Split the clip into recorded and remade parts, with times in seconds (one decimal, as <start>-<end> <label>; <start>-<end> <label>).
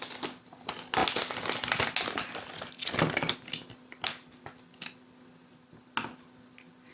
0.0-6.9 recorded